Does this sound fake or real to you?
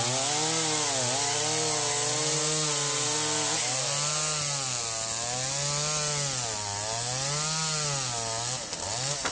real